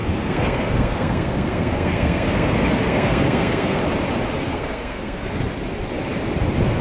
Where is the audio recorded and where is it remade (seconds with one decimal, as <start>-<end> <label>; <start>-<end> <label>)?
0.0-3.8 remade; 3.8-4.4 recorded; 4.4-5.3 remade; 5.3-6.8 recorded